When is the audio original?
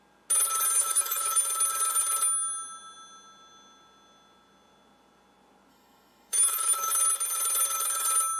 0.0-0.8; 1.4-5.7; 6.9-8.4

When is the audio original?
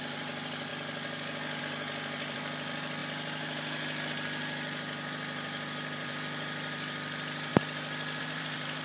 0.7-1.6; 3.0-4.1; 7.5-8.2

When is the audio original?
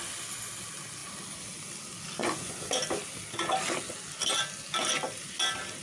0.0-2.2; 2.7-5.8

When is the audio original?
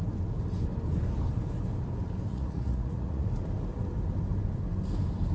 0.0-2.3; 3.3-5.3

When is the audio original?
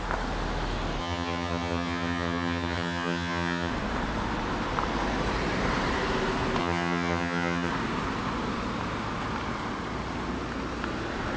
0.0-1.0; 3.7-6.6; 7.7-11.4